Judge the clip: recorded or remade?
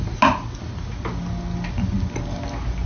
recorded